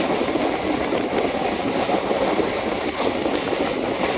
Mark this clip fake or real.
real